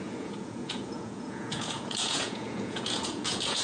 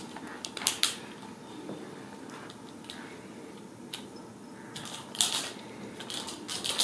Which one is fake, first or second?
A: first